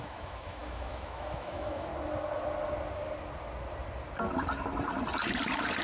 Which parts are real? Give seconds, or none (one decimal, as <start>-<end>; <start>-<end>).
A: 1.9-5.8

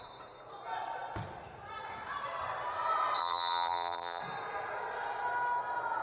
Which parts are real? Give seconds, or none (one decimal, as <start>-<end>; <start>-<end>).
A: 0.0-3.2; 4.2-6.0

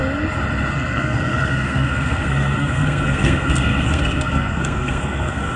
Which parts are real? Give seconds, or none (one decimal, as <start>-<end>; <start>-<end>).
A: 0.0-0.7

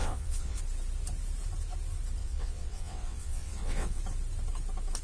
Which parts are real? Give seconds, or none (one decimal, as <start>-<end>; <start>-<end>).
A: 0.6-2.2; 4.0-5.0

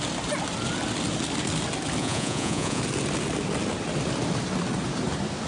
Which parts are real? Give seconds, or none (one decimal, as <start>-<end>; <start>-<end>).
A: 0.0-2.0; 2.8-5.5